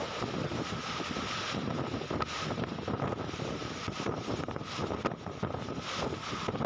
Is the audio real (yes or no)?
yes